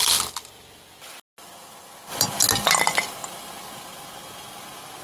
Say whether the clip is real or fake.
real